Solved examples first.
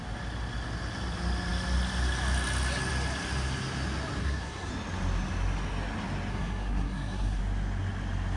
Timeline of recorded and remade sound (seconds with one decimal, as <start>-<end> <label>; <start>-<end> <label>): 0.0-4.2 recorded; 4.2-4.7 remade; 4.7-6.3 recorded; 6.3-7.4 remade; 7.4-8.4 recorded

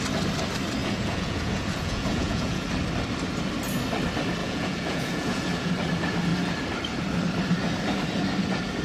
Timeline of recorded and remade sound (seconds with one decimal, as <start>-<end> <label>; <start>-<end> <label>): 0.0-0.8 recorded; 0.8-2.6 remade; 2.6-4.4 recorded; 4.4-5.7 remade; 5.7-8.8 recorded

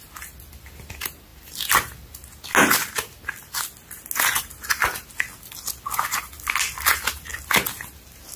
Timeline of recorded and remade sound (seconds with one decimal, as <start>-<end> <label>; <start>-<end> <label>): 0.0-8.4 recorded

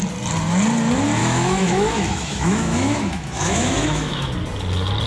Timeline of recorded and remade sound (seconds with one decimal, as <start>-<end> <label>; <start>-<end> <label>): 0.0-1.2 recorded; 1.2-4.3 remade; 4.3-5.1 recorded

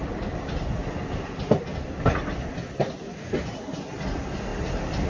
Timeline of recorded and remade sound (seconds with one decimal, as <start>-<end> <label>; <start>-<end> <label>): 0.0-5.1 recorded